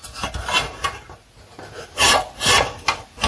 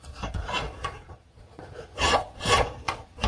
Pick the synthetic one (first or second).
second